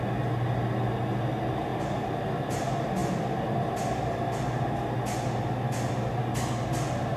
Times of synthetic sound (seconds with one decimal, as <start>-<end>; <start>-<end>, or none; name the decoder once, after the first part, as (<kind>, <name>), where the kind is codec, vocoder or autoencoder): 1.7-2.3 (vocoder, BigVGAN v2)